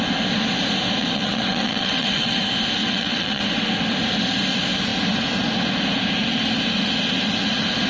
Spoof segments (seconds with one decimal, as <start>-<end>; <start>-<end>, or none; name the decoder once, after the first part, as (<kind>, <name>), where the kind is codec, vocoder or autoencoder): 1.0-2.4 (vocoder, WaveNeXt); 2.8-3.4